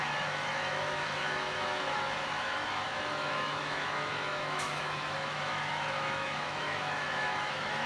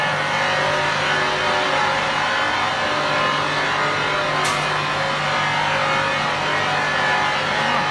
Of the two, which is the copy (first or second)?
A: first